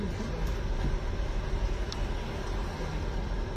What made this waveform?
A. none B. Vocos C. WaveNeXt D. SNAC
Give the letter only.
A